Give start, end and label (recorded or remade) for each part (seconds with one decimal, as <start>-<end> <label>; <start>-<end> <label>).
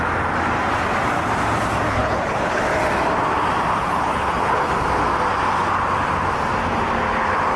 0.0-1.9 recorded; 1.9-2.6 remade; 2.6-3.8 recorded; 3.8-4.7 remade; 4.7-7.6 recorded